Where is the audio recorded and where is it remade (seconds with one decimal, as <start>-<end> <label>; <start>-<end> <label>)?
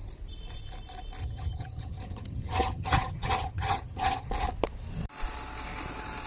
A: 0.0-1.2 recorded; 1.2-4.3 remade; 4.3-6.3 recorded